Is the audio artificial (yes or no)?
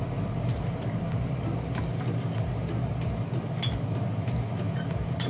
no